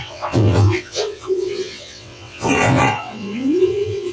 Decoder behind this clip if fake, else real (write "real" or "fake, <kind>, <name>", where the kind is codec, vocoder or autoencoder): fake, vocoder, WaveNeXt